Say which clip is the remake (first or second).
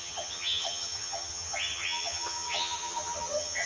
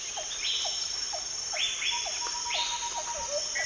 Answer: first